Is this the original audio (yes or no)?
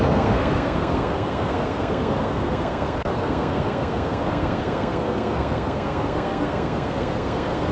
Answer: no